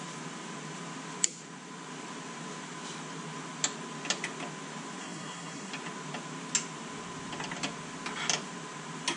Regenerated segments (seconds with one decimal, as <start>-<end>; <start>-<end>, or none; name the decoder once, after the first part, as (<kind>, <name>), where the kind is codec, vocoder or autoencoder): 5.0-5.7 (codec, SNAC)